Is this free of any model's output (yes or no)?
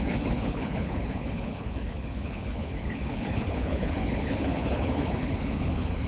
no